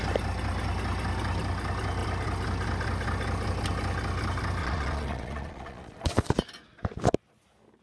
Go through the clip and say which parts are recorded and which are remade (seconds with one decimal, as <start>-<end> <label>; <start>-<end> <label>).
0.0-4.6 recorded; 4.6-6.3 remade; 6.3-7.8 recorded